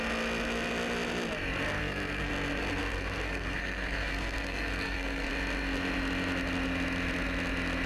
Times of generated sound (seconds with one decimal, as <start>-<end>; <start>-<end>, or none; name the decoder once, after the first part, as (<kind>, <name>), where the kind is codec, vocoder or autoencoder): 1.8-2.3 (codec, SNAC); 2.8-5.3